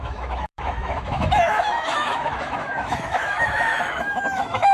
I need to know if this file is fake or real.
fake